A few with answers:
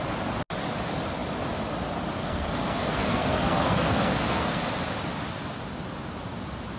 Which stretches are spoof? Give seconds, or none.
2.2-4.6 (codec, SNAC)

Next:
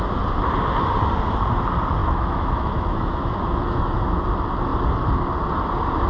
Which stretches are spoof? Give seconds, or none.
2.0-4.3 (autoencoder, DAC-VAE)

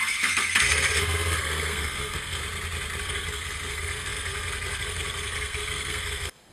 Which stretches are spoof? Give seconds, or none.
0.0-2.4 (codec, SNAC); 3.0-6.5

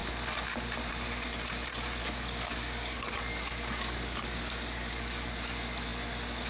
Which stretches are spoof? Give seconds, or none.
2.0-5.3 (codec, DAC)

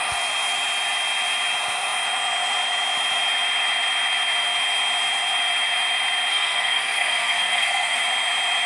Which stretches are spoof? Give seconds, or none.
6.3-8.0 (codec, SNAC)